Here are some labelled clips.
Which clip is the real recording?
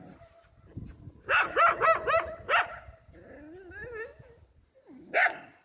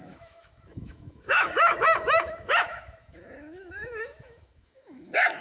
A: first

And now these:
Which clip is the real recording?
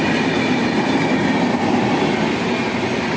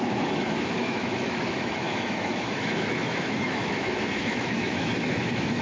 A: first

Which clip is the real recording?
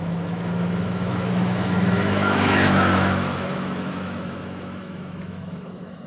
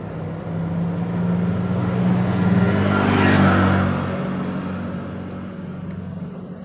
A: second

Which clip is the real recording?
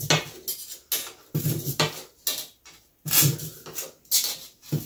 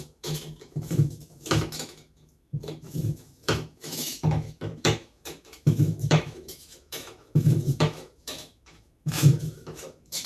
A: first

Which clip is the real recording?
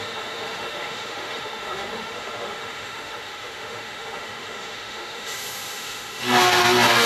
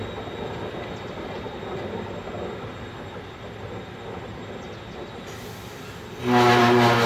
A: second